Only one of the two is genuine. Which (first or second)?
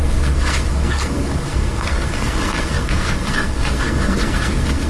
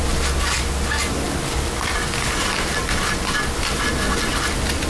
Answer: second